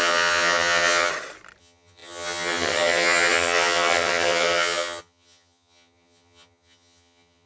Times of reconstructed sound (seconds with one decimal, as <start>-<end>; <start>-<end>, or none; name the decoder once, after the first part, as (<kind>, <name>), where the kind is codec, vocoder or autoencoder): 0.0-1.1 (vocoder, HiFi-GAN); 1.6-7.5